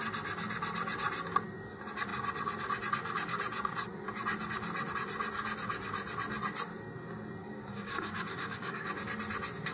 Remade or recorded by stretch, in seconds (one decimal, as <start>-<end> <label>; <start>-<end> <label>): 0.0-7.4 recorded; 7.4-8.9 remade; 8.9-9.7 recorded